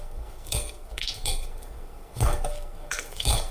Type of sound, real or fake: fake